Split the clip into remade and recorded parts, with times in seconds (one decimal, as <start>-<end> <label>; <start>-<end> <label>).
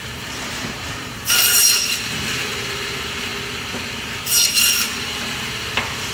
0.0-3.3 remade; 3.3-4.0 recorded; 4.0-6.1 remade